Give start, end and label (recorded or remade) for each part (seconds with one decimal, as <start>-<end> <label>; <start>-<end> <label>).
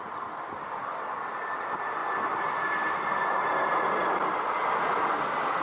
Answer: 0.0-5.6 recorded